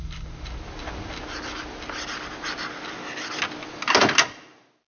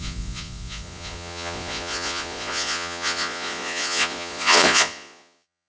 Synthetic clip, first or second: second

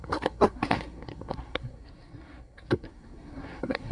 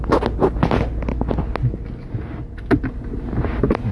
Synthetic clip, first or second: first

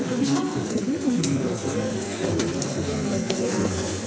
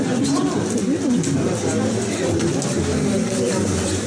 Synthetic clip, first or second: first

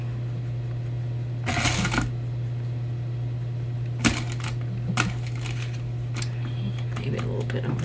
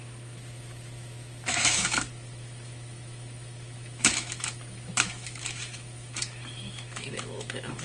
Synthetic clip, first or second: second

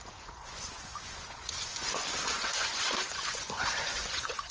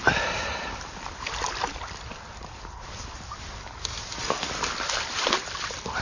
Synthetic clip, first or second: first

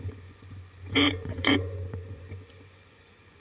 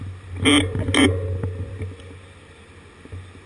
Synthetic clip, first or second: first